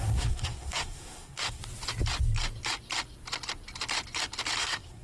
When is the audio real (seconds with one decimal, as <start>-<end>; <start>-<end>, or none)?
1.6-4.6